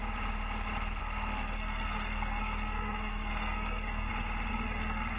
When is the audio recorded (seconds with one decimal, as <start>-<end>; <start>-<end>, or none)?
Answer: 0.0-1.0; 4.1-4.5